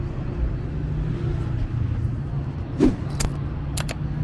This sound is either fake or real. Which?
real